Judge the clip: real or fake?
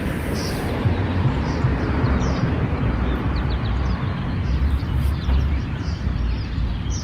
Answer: fake